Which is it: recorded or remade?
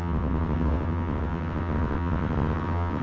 remade